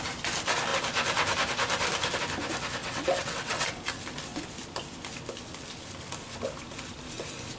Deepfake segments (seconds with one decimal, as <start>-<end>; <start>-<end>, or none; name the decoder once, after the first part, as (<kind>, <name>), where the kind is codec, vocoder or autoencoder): 2.8-3.7 (vocoder, WaveNeXt)

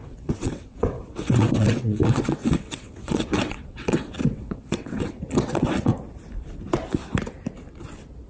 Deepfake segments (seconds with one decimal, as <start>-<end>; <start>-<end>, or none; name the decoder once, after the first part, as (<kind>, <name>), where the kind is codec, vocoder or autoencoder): 0.0-5.9 (vocoder, WaveNeXt)

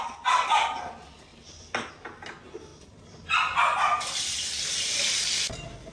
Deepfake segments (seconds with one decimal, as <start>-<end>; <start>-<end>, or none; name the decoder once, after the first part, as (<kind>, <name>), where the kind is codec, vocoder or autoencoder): none

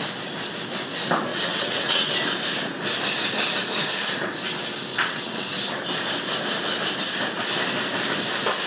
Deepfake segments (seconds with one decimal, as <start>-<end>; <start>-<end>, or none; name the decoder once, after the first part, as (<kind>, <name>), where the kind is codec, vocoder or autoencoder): 1.3-2.1 (vocoder, WaveNeXt); 4.9-5.6